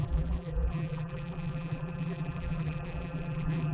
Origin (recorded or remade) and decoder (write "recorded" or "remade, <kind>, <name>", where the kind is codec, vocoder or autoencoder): remade, vocoder, BigVGAN v2